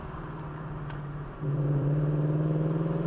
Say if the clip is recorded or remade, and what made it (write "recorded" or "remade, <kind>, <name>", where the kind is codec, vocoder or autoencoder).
remade, vocoder, BigVGAN v2